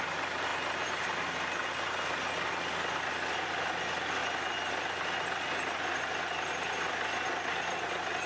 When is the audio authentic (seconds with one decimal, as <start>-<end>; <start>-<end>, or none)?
0.0-8.3